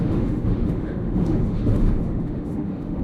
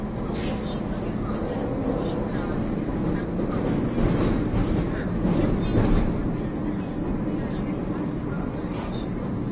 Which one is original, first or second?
second